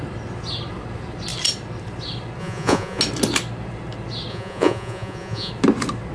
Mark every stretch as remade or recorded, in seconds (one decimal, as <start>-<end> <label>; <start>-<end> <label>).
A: 0.0-2.4 recorded; 2.4-3.0 remade; 3.0-4.3 recorded; 4.3-5.5 remade; 5.5-6.1 recorded